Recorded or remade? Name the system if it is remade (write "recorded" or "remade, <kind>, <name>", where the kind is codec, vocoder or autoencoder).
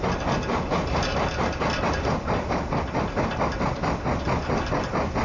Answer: recorded